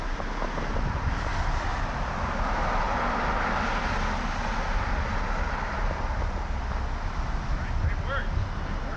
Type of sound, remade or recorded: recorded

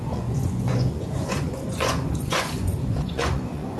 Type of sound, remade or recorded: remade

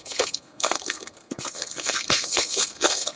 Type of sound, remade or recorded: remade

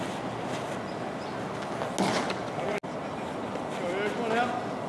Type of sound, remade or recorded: recorded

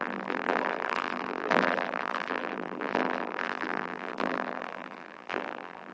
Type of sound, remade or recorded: remade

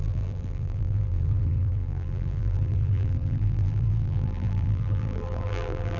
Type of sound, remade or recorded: remade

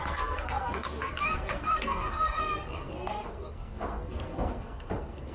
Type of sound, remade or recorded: remade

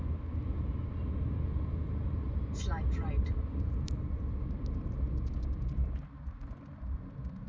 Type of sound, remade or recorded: recorded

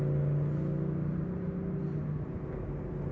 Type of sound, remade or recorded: recorded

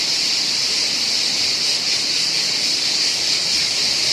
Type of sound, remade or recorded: recorded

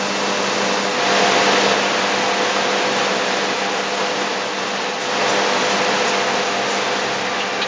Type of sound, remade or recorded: recorded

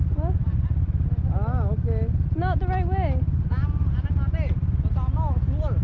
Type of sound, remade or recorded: recorded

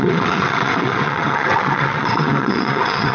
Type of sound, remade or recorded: remade